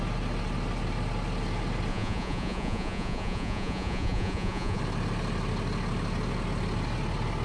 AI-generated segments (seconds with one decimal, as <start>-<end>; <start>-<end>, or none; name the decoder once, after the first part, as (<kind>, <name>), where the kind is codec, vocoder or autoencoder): 1.9-4.8 (vocoder, Vocos)